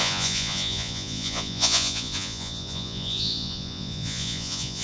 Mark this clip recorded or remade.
remade